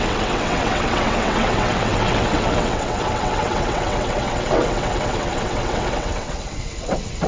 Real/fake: fake